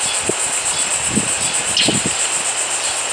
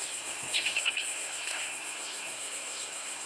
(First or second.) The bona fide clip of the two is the first